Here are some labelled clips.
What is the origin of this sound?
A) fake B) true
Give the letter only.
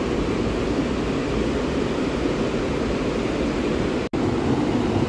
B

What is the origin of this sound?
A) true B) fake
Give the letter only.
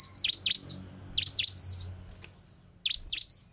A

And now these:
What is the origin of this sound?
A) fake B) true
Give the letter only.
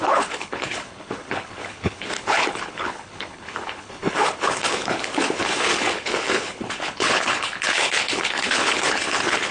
A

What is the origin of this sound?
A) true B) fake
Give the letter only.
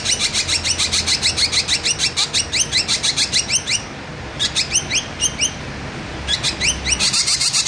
A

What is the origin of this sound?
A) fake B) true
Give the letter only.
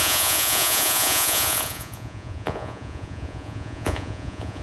A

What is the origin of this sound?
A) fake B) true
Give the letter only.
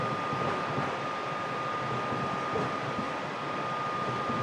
A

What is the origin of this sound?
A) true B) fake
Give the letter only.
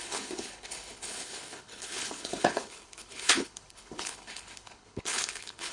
B